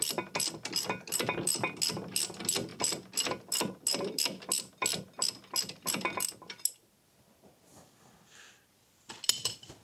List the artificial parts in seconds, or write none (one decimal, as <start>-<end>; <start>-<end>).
none